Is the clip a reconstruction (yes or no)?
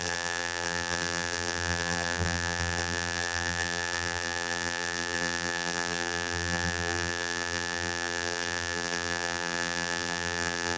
yes